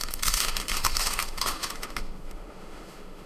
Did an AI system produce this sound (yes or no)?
yes